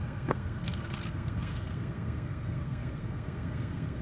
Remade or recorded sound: remade